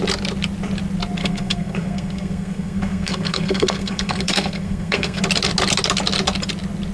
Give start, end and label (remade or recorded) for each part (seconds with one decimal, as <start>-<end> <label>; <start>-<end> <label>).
0.0-1.2 recorded; 1.2-5.2 remade; 5.2-6.9 recorded